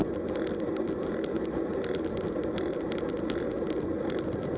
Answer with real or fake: real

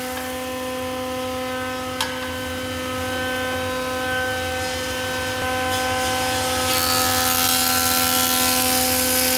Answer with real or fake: real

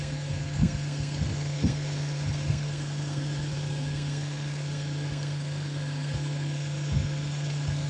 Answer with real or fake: fake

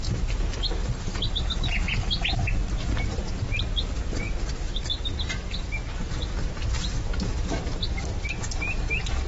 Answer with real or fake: real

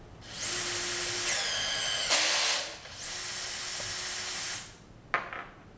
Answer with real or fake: real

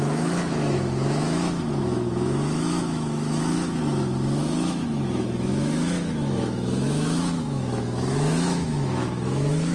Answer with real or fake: fake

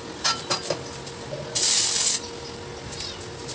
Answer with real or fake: real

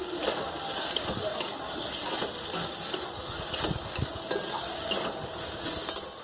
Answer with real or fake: real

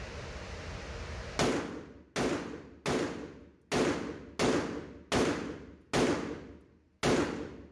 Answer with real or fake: real